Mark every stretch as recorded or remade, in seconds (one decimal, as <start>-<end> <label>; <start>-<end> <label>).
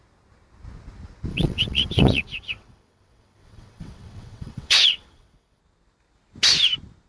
0.0-1.3 recorded; 1.3-5.6 remade; 5.6-7.1 recorded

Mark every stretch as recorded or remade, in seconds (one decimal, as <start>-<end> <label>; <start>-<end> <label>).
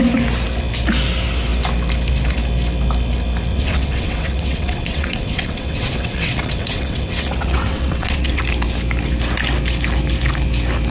0.0-3.5 recorded; 3.5-8.4 remade; 8.4-10.9 recorded